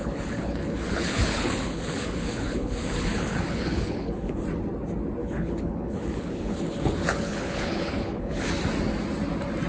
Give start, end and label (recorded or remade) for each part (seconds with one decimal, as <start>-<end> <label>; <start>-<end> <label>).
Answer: 0.0-4.4 remade; 4.4-5.2 recorded; 5.2-8.5 remade; 8.5-9.7 recorded